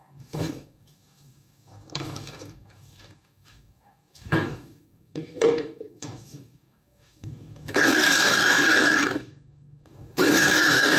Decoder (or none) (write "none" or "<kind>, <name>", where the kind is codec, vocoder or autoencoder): codec, DAC